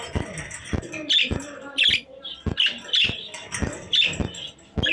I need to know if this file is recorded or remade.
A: remade